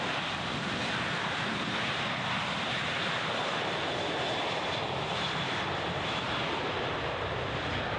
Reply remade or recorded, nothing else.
recorded